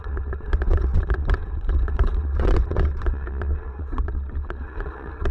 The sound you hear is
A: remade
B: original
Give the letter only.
A